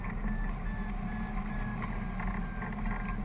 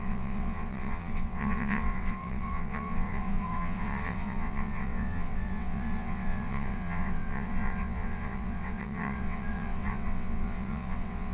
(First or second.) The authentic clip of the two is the first